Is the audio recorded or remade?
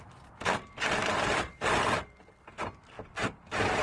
recorded